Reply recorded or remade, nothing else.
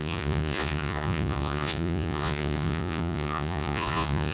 remade